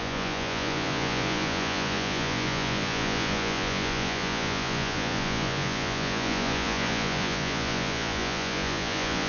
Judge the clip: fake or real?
fake